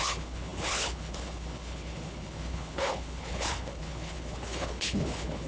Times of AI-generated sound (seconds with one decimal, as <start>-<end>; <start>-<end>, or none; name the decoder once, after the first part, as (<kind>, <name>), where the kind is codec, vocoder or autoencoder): 0.0-5.5 (codec, HILCodec)